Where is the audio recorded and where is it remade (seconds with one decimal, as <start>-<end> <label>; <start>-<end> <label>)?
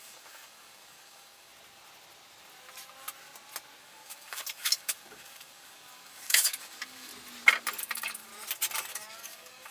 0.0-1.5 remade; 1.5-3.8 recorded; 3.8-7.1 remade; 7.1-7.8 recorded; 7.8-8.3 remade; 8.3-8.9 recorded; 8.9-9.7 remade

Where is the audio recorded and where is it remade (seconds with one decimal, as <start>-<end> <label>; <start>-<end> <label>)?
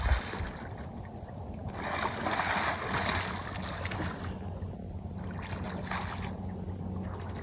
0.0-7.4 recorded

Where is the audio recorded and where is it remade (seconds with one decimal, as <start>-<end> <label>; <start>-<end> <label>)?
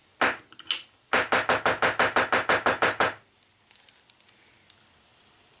0.0-5.6 recorded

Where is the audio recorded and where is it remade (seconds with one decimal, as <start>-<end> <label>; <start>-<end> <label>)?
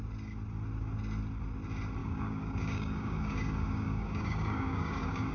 0.0-2.0 recorded; 2.0-5.3 remade